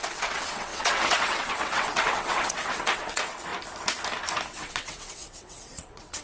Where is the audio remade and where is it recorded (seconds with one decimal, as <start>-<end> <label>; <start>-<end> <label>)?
0.0-3.5 remade; 3.5-4.5 recorded; 4.5-6.2 remade